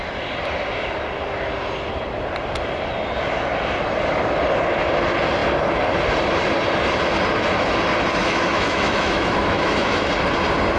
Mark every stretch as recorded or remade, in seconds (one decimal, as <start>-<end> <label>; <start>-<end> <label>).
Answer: 0.0-8.2 recorded; 8.2-10.1 remade; 10.1-10.8 recorded